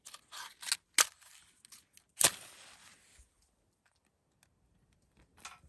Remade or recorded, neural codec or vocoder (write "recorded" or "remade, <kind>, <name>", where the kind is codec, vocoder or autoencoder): recorded